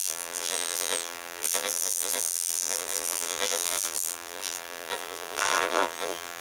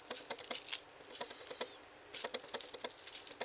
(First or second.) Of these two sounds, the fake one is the first